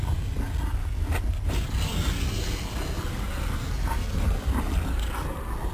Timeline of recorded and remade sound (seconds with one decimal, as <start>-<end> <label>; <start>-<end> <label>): 0.0-5.7 recorded